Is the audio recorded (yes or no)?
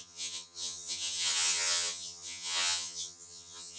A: no